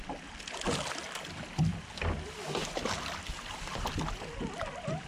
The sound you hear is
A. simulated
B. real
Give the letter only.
B